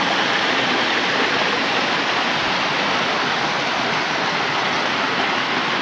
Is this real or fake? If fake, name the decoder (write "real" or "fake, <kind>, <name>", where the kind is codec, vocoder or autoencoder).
real